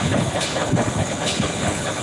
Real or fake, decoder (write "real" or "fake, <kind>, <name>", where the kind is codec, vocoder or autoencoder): fake, codec, HILCodec